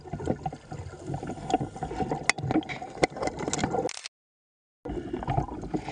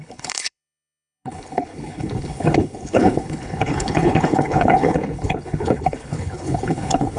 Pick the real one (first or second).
first